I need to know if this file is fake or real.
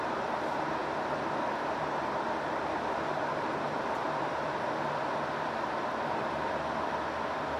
fake